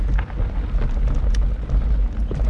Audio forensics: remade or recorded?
recorded